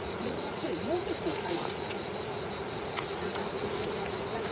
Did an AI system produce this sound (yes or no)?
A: yes